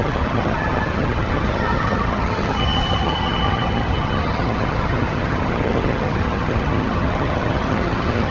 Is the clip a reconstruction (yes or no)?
yes